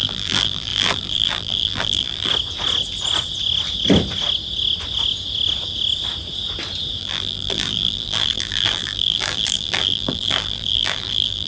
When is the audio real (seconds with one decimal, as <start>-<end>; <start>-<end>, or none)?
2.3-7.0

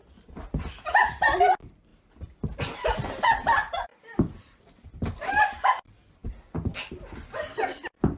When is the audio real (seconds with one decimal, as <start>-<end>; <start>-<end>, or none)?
none

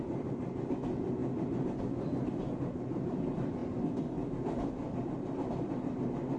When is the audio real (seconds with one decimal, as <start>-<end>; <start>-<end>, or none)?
0.0-1.2; 1.8-6.4